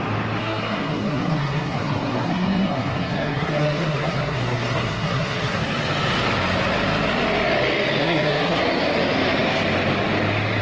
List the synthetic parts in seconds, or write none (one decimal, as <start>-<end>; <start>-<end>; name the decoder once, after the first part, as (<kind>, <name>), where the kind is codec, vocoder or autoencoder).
0.4-5.6 (codec, SNAC); 8.0-8.6